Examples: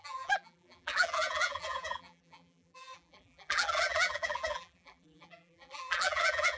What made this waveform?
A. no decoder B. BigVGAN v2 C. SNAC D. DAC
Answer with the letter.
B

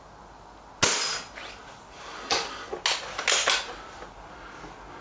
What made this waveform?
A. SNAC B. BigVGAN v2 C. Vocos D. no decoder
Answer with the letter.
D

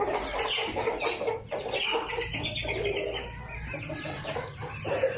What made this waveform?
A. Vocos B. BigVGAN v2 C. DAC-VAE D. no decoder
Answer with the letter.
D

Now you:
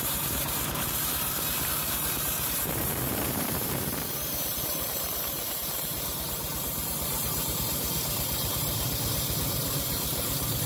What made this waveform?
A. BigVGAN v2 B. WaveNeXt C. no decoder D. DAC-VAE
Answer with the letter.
A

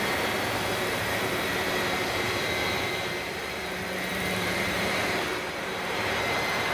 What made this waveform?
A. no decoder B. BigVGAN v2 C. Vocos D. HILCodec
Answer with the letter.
B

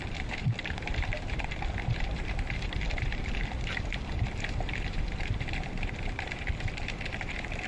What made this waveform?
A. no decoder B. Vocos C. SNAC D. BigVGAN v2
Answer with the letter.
D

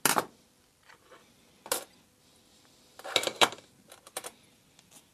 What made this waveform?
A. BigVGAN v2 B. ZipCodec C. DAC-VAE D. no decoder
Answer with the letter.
D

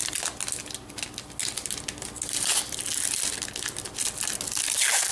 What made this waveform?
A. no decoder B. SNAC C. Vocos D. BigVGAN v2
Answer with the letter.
A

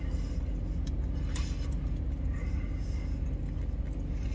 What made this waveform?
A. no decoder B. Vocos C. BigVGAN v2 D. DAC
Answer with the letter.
A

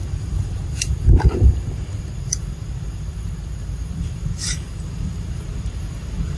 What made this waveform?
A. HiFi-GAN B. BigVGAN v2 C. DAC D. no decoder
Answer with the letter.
B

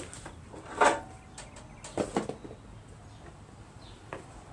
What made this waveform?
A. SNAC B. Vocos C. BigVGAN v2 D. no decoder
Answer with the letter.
D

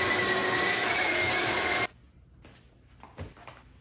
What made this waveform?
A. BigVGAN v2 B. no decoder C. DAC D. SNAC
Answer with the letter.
B